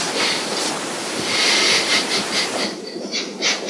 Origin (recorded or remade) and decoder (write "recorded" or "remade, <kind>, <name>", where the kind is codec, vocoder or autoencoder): remade, vocoder, BigVGAN v2